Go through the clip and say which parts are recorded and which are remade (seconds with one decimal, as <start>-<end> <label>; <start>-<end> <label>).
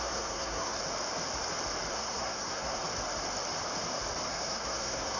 0.0-0.8 remade; 0.8-1.9 recorded; 1.9-2.8 remade; 2.8-4.3 recorded; 4.3-5.2 remade